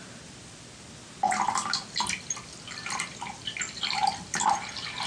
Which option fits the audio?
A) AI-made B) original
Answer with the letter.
B